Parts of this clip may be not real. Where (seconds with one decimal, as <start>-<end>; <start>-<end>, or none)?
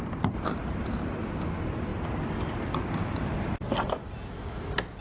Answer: none